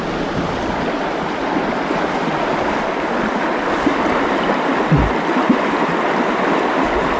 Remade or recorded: recorded